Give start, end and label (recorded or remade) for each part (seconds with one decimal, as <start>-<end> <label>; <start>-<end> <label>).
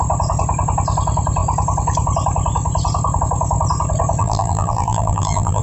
0.0-4.2 recorded; 4.2-5.6 remade